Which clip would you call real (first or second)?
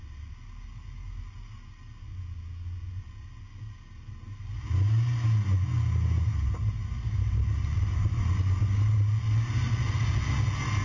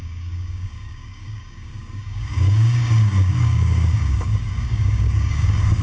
first